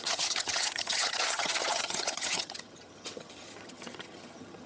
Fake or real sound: fake